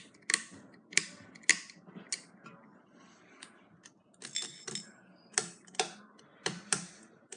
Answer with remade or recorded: recorded